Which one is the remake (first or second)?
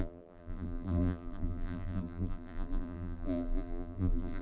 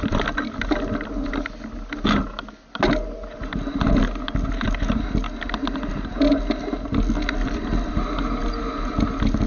first